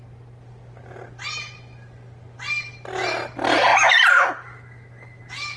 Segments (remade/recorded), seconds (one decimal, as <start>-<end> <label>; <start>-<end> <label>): 0.0-5.6 recorded